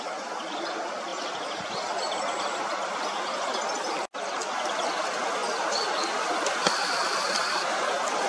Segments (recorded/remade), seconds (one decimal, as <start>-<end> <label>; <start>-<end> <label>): 0.0-1.1 remade; 1.1-5.0 recorded; 5.0-5.4 remade; 5.4-6.4 recorded; 6.4-8.3 remade